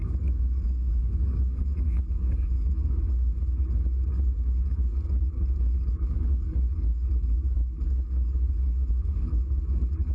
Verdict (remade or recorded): remade